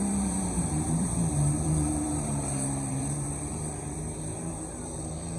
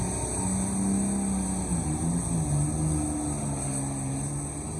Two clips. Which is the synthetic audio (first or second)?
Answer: first